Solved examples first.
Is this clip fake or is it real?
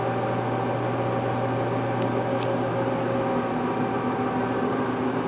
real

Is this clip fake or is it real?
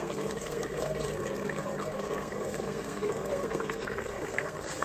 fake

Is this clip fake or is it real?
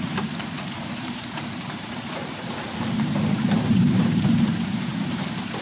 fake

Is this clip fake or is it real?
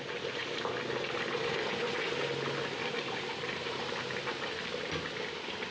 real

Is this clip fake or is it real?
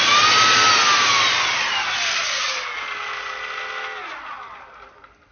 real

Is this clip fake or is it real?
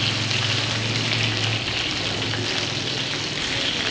real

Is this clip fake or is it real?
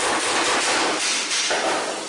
fake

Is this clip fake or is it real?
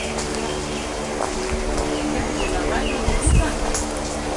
real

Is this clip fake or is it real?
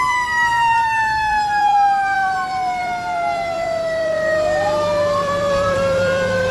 fake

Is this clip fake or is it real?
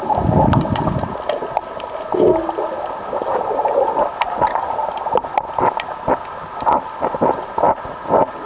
real